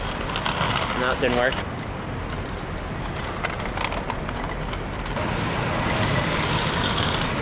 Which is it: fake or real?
real